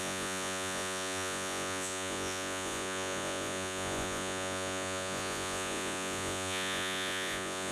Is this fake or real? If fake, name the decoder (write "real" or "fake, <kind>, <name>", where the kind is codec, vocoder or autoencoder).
fake, vocoder, Vocos